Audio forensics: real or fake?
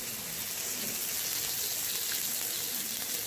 real